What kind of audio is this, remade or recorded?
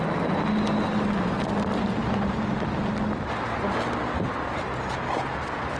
recorded